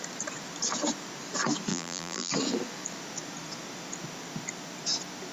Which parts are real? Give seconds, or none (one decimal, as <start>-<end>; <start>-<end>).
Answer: 0.0-1.7; 2.3-5.3